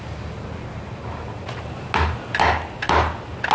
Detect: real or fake real